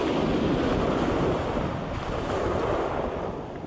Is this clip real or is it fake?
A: real